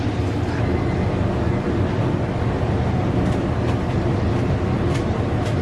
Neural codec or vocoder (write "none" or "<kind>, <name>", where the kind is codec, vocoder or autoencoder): none